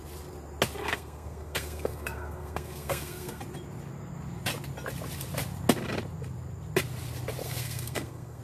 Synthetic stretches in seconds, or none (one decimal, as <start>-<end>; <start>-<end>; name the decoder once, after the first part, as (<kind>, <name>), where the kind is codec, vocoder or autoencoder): 0.8-3.4 (codec, SNAC); 7.4-8.4